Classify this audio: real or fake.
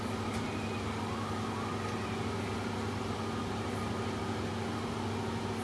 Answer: real